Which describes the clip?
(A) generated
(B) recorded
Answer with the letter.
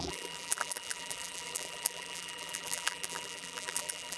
A